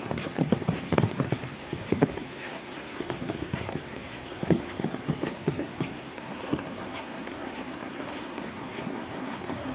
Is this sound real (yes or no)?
no